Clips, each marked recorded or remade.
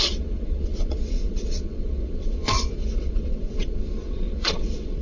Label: remade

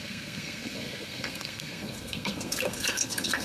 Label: remade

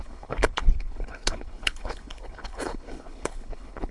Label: remade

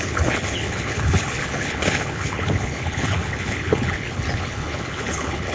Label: remade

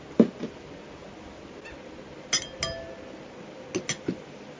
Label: recorded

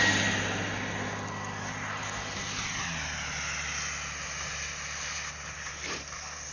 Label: recorded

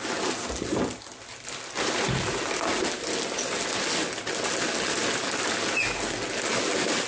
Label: recorded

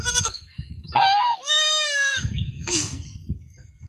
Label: remade